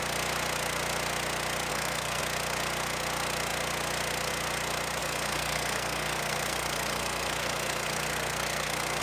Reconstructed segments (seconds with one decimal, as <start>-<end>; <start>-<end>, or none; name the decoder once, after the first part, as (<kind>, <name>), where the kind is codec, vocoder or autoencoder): 1.7-2.2 (codec, SNAC); 5.0-9.0